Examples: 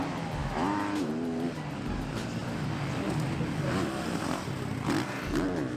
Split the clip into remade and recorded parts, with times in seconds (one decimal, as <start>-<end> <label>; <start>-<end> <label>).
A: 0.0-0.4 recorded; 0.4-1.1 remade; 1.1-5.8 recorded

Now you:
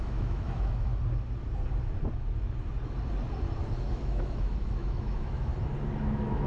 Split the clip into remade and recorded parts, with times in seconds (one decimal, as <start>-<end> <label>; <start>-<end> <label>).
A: 0.0-0.9 remade; 0.9-3.9 recorded; 3.9-5.5 remade; 5.5-6.0 recorded; 6.0-6.5 remade

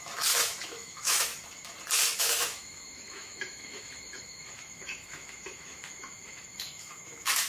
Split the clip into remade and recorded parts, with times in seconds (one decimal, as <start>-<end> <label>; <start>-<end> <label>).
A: 0.0-1.3 remade; 1.3-2.2 recorded; 2.2-7.5 remade

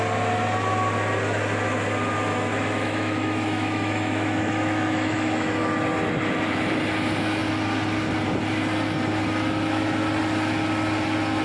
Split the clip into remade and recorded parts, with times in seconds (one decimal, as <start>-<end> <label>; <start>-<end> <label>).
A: 0.0-2.3 recorded; 2.3-5.6 remade; 5.6-11.4 recorded

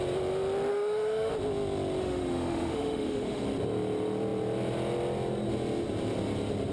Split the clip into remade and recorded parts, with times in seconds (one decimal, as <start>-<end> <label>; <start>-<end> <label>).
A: 0.0-0.7 recorded; 0.7-1.3 remade; 1.3-2.0 recorded; 2.0-3.4 remade; 3.4-6.7 recorded

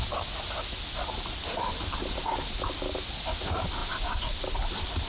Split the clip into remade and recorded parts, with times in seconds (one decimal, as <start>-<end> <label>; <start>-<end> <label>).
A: 0.0-5.1 recorded

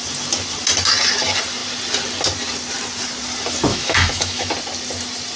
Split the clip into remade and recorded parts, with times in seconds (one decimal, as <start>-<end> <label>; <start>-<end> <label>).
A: 0.0-3.7 recorded; 3.7-4.5 remade; 4.5-5.4 recorded

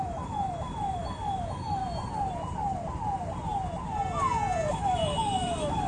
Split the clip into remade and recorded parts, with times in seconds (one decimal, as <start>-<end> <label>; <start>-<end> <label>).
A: 0.0-1.8 remade; 1.8-4.7 recorded; 4.7-5.9 remade